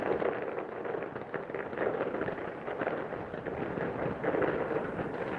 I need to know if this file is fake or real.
real